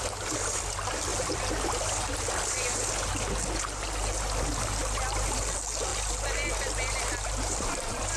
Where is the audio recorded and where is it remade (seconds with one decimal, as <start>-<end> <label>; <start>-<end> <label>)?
0.0-8.2 recorded